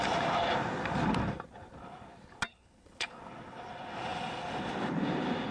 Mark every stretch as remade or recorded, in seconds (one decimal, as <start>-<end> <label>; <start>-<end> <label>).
0.0-2.5 recorded; 2.5-3.1 remade; 3.1-5.5 recorded